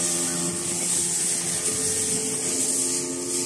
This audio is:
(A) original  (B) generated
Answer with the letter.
A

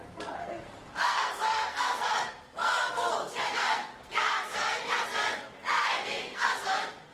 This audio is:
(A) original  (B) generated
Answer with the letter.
B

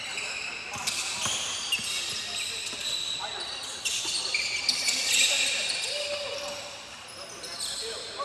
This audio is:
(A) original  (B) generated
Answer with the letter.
A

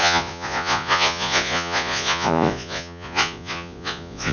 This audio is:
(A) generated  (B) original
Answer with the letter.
A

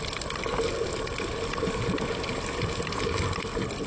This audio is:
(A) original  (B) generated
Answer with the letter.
A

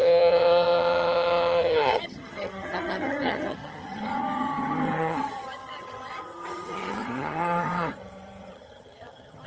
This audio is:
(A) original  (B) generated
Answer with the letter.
B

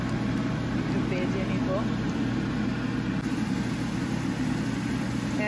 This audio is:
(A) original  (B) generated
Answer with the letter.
A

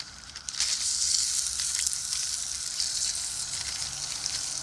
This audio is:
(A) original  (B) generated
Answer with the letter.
A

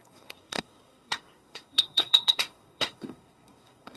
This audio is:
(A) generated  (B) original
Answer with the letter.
A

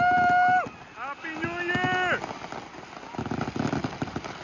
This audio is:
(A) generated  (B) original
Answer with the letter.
B